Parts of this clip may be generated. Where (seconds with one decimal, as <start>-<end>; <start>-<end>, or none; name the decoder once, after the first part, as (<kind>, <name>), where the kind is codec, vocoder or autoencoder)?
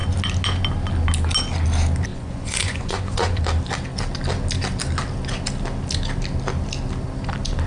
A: 2.1-3.4 (vocoder, Vocos)